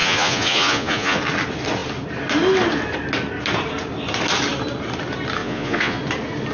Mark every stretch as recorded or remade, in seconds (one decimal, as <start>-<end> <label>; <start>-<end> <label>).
0.0-1.2 remade; 1.2-5.4 recorded; 5.4-6.0 remade; 6.0-6.5 recorded